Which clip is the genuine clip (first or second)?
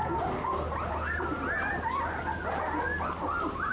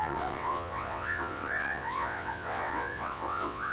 first